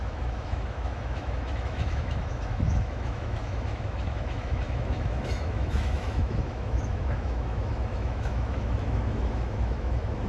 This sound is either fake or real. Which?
fake